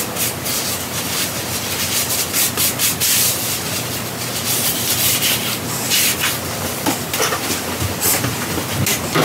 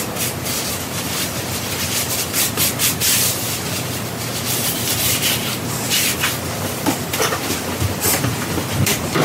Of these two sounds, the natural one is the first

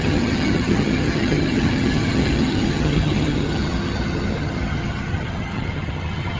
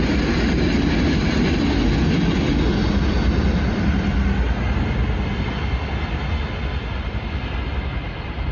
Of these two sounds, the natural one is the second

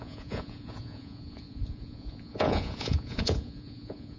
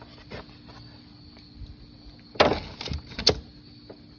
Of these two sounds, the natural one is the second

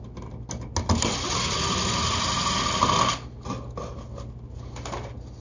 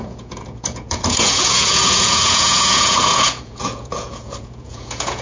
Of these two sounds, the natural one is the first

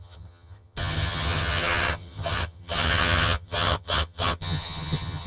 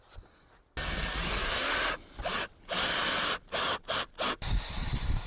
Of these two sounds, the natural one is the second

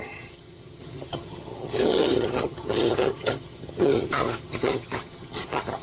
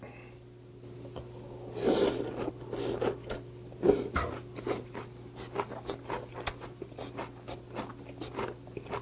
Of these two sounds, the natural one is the second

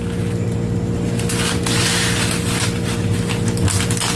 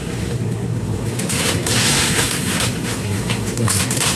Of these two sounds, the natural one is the first